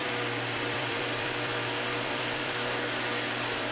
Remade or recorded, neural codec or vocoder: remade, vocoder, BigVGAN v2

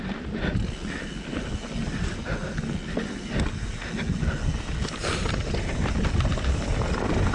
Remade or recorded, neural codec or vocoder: recorded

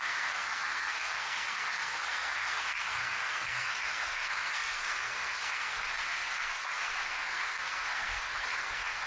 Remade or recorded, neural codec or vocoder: remade, codec, SNAC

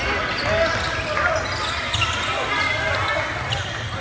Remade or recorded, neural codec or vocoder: recorded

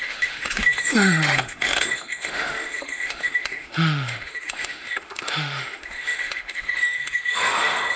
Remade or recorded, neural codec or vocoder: remade, autoencoder, DAC-VAE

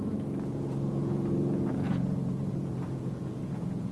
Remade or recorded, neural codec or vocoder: remade, vocoder, Vocos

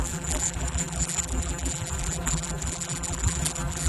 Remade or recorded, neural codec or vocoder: remade, vocoder, BigVGAN v2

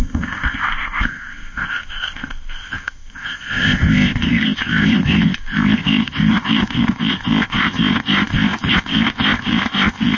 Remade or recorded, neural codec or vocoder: remade, codec, ZipCodec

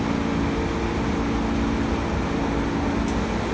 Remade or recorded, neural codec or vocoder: recorded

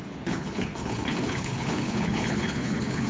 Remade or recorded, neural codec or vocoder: remade, codec, HILCodec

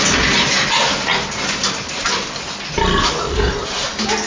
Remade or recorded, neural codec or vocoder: recorded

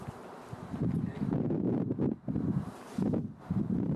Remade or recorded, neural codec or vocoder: recorded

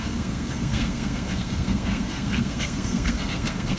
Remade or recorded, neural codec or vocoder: remade, codec, SNAC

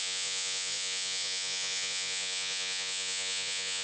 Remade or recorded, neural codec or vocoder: remade, vocoder, Vocos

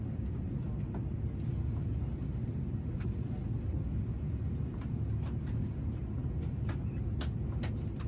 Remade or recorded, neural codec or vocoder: recorded